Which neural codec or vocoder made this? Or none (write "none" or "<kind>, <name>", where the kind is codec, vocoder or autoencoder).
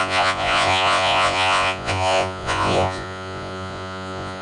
vocoder, Vocos